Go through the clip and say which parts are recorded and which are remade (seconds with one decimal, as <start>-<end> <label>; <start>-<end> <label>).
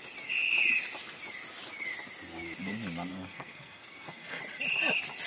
0.0-3.1 recorded; 3.1-4.4 remade; 4.4-5.3 recorded